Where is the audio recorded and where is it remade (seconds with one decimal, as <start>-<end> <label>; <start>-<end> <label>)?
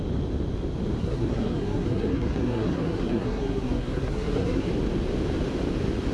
0.0-1.0 recorded; 1.0-4.7 remade; 4.7-6.1 recorded